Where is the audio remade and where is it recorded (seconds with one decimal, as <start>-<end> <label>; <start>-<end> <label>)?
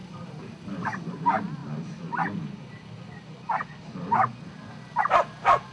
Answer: 0.0-0.8 remade; 0.8-5.7 recorded